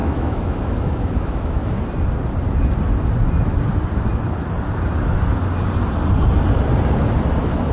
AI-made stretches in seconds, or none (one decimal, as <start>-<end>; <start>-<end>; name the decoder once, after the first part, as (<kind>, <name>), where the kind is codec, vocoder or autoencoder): 0.0-1.8 (autoencoder, DAC-VAE)